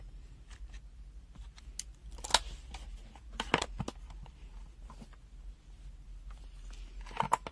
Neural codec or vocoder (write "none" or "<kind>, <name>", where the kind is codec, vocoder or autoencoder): none